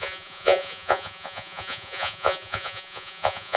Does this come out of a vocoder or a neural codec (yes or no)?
yes